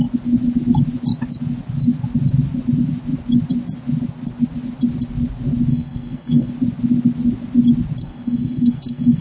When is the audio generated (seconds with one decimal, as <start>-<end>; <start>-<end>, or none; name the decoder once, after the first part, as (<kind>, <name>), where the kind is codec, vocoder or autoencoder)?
5.7-6.5 (codec, SNAC); 8.0-9.2